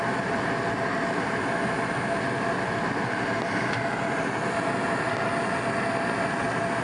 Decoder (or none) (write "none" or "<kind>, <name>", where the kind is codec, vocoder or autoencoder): none